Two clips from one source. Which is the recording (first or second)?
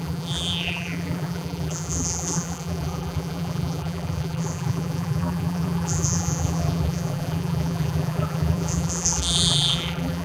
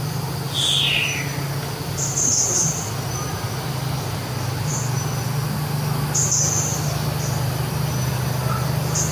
second